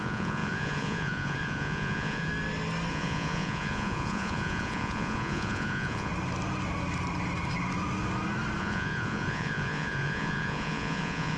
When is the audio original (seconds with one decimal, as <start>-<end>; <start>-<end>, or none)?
2.3-2.9; 6.1-8.6